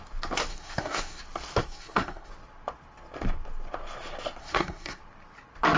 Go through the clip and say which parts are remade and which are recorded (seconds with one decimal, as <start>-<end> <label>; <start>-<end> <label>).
0.0-0.5 recorded; 0.5-1.2 remade; 1.2-1.6 recorded; 1.6-2.3 remade; 2.3-4.4 recorded; 4.4-5.0 remade; 5.0-5.8 recorded